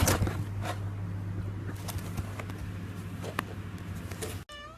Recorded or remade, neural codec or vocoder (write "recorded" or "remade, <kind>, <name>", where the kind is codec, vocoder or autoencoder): recorded